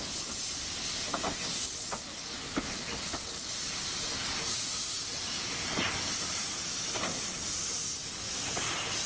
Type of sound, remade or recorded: recorded